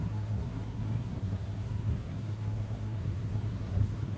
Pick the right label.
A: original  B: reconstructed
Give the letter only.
B